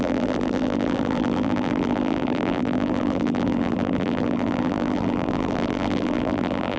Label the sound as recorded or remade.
remade